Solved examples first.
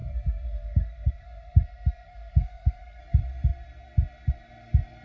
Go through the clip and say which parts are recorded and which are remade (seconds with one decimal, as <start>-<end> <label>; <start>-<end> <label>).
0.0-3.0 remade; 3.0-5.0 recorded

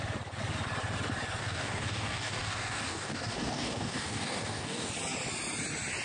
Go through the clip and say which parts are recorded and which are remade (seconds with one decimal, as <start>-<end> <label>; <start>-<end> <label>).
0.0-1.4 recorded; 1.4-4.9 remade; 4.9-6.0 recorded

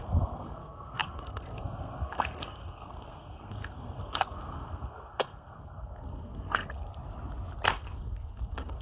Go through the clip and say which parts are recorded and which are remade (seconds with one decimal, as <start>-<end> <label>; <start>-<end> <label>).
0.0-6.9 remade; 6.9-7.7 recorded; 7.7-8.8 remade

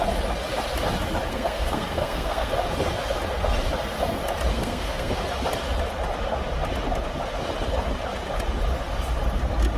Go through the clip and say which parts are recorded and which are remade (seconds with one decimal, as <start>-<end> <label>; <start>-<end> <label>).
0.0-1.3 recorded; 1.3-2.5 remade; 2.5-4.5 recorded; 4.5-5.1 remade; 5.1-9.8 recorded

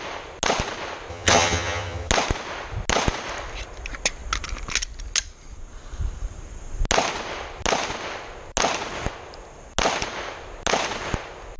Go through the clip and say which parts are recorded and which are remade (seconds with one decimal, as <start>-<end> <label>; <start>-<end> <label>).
0.0-1.1 recorded; 1.1-2.1 remade; 2.1-11.6 recorded

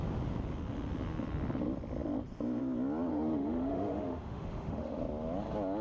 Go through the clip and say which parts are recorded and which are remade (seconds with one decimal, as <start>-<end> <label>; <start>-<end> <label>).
0.0-3.1 recorded; 3.1-5.0 remade; 5.0-5.8 recorded